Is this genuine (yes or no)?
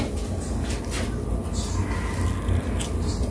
yes